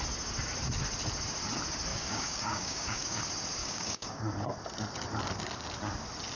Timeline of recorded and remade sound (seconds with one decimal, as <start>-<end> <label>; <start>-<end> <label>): 0.0-1.9 recorded; 1.9-3.2 remade; 3.2-3.6 recorded; 3.6-4.2 remade; 4.2-6.4 recorded